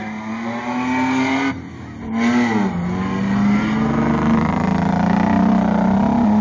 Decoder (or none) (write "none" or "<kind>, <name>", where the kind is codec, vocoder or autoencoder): none